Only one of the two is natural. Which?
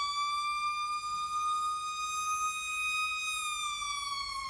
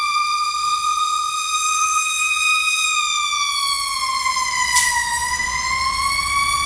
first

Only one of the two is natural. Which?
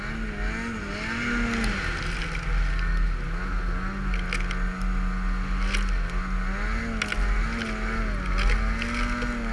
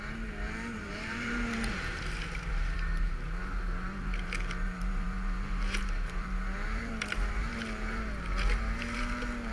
first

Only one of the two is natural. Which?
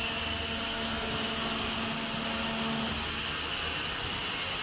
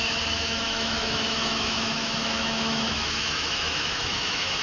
first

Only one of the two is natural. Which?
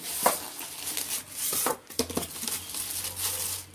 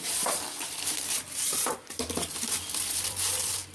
first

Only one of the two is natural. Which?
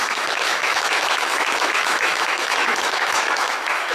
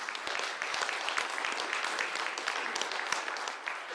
second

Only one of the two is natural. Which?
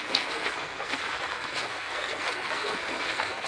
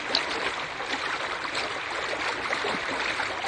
second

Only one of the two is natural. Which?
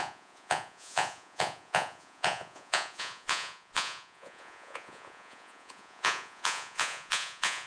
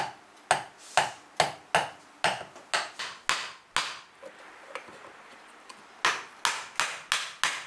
second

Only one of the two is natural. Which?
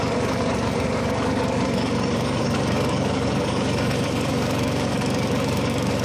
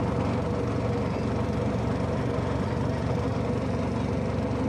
second